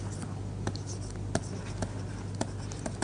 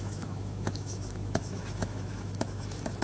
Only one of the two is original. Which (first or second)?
first